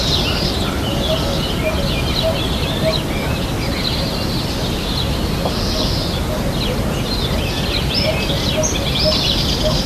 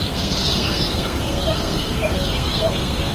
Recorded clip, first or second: first